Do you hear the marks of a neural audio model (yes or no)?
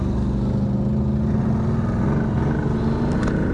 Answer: no